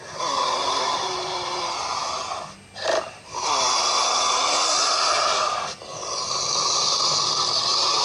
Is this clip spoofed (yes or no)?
no